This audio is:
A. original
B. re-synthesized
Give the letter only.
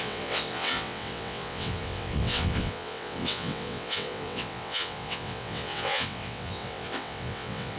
B